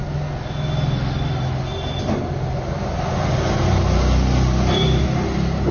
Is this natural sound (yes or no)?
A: yes